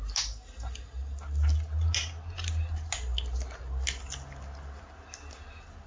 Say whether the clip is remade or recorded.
recorded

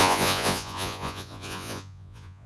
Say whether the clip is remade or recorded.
remade